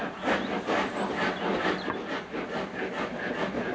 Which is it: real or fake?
real